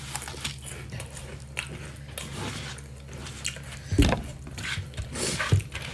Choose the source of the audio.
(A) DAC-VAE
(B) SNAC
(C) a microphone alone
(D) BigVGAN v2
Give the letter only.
C